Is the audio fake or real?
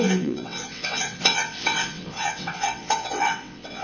fake